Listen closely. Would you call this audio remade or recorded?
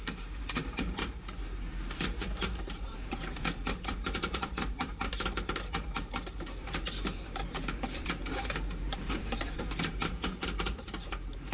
remade